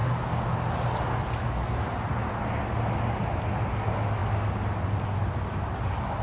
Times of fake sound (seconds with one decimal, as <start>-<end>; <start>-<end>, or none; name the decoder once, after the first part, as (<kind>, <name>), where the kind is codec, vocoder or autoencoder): none